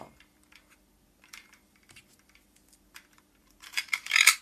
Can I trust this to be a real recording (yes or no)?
no